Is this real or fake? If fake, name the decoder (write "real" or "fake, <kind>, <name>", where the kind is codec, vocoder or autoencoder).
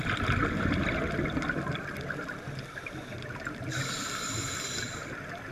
real